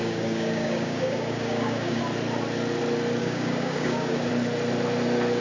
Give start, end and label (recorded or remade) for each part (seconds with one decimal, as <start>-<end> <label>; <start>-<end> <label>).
0.0-2.0 remade; 2.0-3.2 recorded; 3.2-4.3 remade; 4.3-5.4 recorded